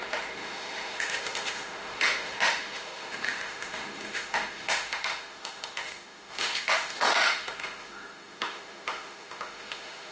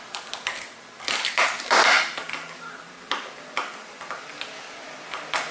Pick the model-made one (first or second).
first